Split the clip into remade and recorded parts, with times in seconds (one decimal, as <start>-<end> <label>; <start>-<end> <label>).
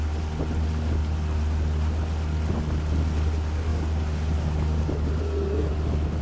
0.0-5.2 recorded; 5.2-5.7 remade; 5.7-6.2 recorded